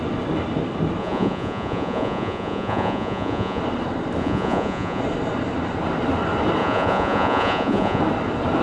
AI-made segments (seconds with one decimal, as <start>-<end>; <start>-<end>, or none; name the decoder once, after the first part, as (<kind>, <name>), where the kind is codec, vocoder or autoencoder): 1.0-3.6 (vocoder, Vocos); 4.2-5.0; 6.6-8.0

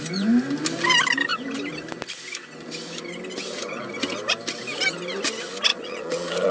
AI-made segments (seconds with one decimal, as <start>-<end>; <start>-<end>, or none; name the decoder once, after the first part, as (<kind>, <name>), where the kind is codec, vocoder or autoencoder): 5.7-6.5 (vocoder, Vocos)